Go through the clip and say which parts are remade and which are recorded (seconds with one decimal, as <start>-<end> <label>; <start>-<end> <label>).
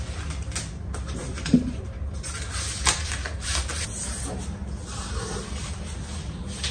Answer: 0.0-6.7 recorded